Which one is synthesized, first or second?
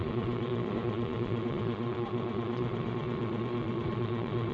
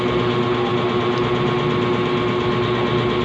first